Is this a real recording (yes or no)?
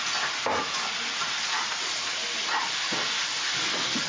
yes